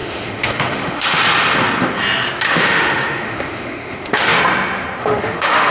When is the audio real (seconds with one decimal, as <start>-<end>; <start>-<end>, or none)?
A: 1.2-2.5; 4.4-5.0